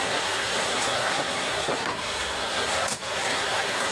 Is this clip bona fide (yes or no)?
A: no